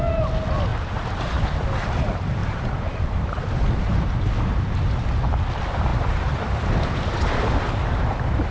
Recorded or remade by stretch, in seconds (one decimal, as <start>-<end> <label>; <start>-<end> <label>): 0.0-0.7 recorded; 0.7-1.6 remade; 1.6-2.4 recorded; 2.4-4.4 remade; 4.4-5.9 recorded; 5.9-6.4 remade; 6.4-8.5 recorded